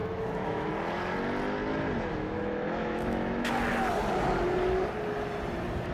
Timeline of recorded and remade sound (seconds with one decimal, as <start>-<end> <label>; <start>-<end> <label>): 0.0-0.7 remade; 0.7-2.1 recorded; 2.1-3.5 remade; 3.5-5.9 recorded